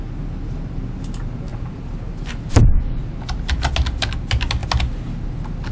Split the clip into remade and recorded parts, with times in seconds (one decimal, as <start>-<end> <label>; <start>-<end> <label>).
0.0-5.7 recorded